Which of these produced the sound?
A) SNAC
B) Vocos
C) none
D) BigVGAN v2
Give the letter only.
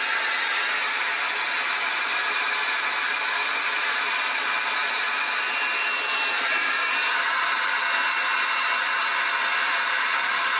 C